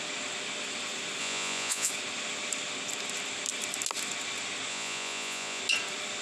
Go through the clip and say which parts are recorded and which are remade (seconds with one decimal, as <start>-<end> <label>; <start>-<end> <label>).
0.0-1.2 recorded; 1.2-1.9 remade; 1.9-4.7 recorded; 4.7-5.6 remade; 5.6-6.2 recorded